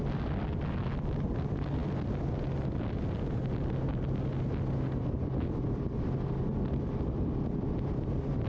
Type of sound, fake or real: real